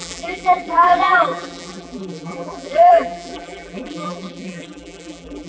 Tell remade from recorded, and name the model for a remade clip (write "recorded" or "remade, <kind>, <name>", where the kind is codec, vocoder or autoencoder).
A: remade, vocoder, BigVGAN v2